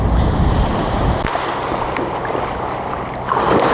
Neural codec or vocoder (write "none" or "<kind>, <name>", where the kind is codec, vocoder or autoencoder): none